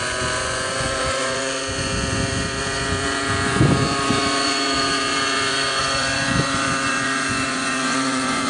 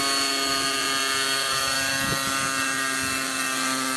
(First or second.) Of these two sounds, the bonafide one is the second